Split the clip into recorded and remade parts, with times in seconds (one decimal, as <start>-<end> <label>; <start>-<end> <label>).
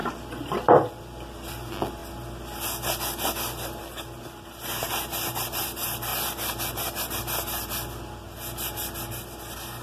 0.0-1.0 remade; 1.0-2.0 recorded; 2.0-3.8 remade; 3.8-9.8 recorded